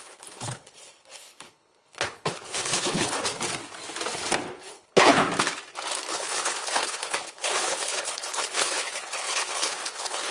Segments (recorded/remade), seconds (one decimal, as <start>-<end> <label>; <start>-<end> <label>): 0.0-3.3 remade; 3.3-4.6 recorded; 4.6-5.2 remade; 5.2-6.1 recorded; 6.1-10.3 remade